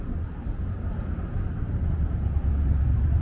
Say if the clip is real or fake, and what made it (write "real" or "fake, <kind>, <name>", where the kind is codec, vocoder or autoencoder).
real